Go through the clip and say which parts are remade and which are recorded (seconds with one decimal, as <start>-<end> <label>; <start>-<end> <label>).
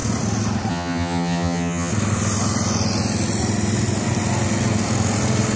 0.0-0.7 recorded; 0.7-1.9 remade; 1.9-5.6 recorded